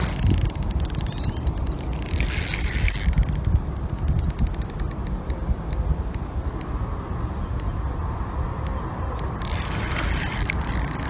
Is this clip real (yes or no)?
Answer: yes